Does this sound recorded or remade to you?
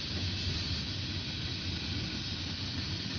recorded